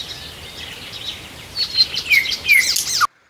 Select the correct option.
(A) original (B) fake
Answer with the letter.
A